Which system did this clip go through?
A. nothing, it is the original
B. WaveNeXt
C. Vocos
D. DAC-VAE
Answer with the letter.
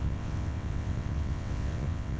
B